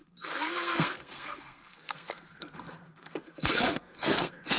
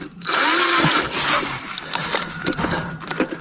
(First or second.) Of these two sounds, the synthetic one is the first